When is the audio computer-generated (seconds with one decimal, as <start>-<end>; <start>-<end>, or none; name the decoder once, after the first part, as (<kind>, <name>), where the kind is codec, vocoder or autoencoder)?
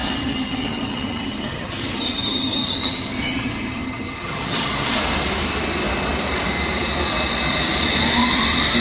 0.0-5.0 (vocoder, HiFi-GAN)